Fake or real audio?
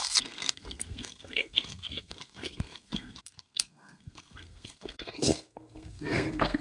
fake